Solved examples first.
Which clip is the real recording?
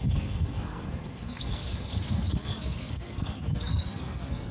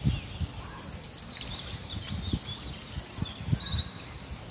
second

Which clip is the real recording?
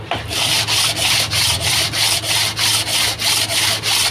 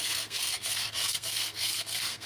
first